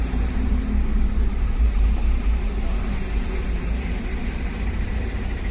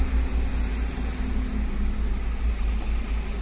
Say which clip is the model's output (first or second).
first